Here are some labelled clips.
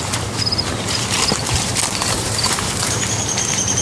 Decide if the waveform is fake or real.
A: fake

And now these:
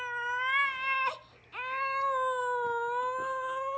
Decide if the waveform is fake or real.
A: real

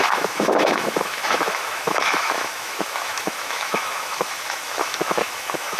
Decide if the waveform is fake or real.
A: fake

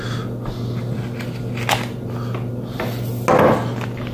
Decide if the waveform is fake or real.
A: real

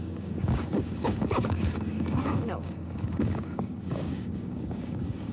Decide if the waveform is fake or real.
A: fake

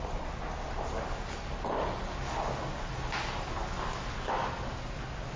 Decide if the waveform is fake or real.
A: real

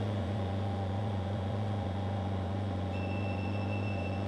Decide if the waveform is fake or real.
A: fake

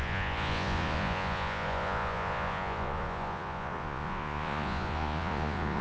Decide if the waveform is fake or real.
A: fake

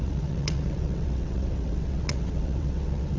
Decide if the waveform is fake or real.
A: fake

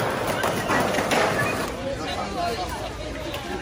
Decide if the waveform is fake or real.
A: real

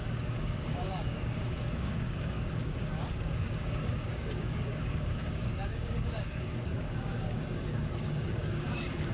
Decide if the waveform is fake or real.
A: fake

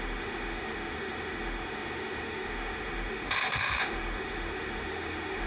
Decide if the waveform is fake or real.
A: fake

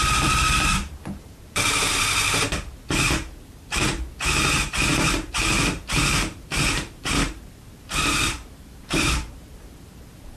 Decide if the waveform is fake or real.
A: fake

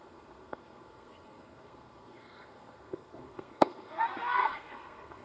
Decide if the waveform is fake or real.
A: fake